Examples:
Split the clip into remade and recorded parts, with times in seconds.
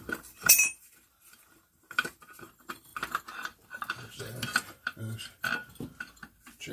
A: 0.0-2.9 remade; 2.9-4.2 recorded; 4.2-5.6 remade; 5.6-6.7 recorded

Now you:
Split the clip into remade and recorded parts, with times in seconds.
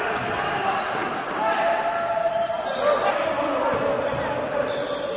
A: 0.0-5.2 recorded